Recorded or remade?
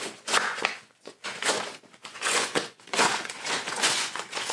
remade